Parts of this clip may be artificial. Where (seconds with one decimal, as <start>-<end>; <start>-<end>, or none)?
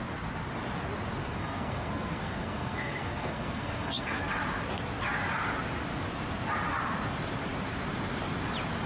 1.2-4.2